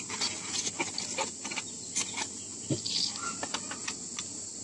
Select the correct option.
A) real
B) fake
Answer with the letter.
A